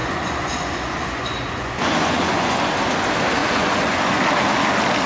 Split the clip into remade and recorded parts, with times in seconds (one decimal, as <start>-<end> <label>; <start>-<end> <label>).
0.0-2.7 remade; 2.7-3.4 recorded; 3.4-4.2 remade; 4.2-5.1 recorded